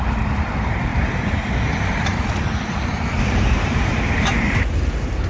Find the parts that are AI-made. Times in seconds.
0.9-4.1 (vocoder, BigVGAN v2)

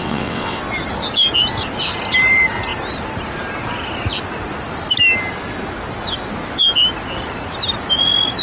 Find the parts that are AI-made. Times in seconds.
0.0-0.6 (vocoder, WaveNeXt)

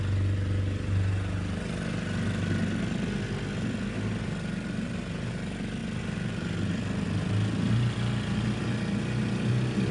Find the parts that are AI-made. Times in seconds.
none

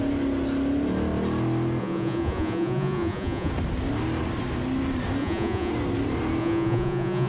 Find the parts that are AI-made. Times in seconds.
1.8-3.5 (vocoder, Vocos); 5.2-5.7; 6.4-7.3

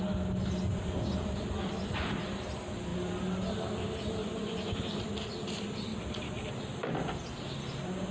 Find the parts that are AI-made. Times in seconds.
4.2-4.8 (vocoder, Vocos)